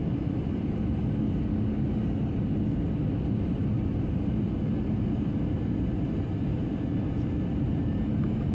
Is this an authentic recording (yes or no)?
yes